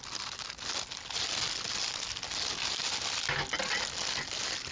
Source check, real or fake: real